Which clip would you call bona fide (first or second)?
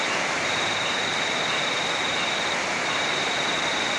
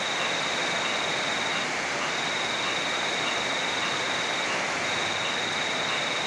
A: second